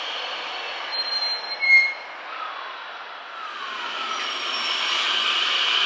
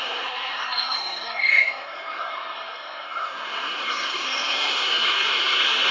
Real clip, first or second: first